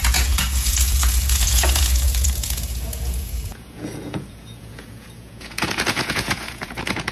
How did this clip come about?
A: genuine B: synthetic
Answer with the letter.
B